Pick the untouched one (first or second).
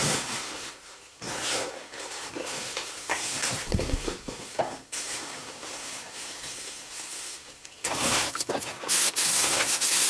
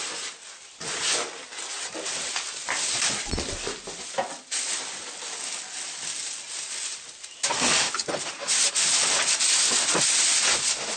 second